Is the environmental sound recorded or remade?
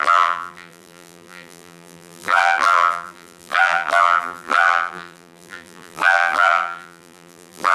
remade